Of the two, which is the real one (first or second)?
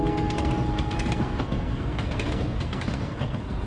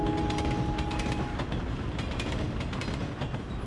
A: second